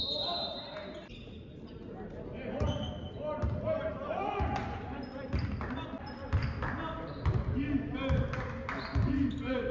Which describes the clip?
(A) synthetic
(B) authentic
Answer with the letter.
B